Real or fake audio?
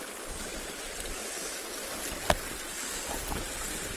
real